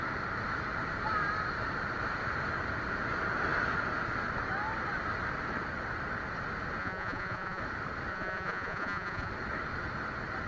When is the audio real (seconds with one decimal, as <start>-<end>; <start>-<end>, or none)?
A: 0.0-6.8; 7.6-8.1; 9.3-10.5